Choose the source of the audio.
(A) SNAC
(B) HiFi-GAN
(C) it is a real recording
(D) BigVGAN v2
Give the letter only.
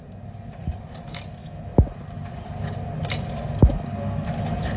C